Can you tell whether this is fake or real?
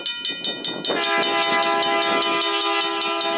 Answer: real